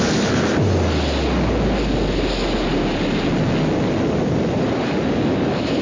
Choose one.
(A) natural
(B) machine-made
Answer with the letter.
A